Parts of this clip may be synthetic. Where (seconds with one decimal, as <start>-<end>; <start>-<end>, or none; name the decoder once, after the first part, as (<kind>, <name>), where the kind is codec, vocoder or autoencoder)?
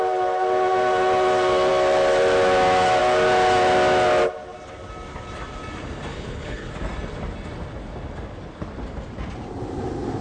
6.1-6.7 (codec, HILCodec)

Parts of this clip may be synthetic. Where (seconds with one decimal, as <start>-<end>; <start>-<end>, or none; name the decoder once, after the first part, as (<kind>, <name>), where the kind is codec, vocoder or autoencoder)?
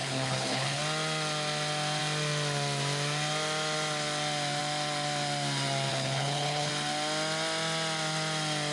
0.0-0.8 (codec, HILCodec); 5.9-6.7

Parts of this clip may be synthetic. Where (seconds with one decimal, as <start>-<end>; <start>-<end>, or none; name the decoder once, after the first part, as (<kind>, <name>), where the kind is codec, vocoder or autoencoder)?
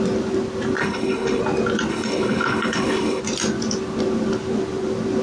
0.8-1.4 (codec, HILCodec); 1.9-3.2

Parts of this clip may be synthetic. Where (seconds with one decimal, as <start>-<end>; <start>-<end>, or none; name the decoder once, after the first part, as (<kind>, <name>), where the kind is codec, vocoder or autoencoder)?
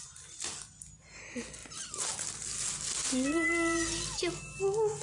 none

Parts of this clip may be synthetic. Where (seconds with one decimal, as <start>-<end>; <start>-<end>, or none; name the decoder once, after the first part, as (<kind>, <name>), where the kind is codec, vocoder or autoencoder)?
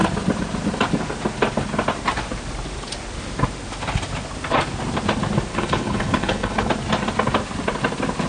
5.5-6.7 (codec, HILCodec)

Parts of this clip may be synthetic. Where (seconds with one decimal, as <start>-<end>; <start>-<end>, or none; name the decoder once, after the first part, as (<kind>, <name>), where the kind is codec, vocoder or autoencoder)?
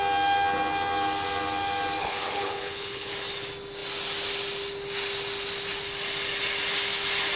2.0-3.1 (codec, HILCodec)